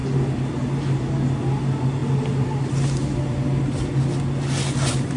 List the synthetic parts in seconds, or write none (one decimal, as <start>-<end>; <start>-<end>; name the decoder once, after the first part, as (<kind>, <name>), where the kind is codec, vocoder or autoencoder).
none